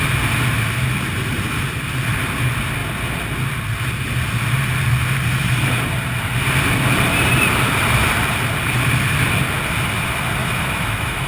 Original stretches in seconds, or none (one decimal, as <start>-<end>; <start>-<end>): 0.0-10.4